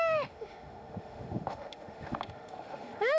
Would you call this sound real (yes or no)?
no